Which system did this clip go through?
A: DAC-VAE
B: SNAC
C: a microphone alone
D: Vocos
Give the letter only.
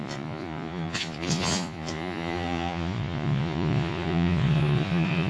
D